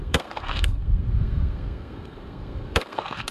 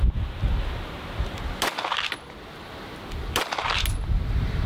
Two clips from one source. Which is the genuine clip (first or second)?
second